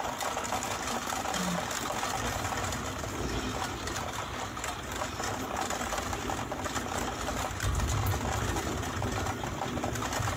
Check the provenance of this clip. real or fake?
real